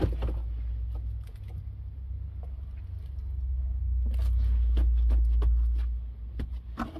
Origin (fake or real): real